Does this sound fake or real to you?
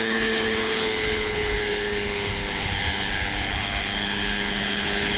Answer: fake